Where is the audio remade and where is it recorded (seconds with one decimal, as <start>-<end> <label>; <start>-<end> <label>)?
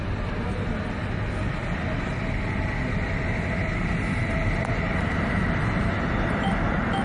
0.0-7.0 recorded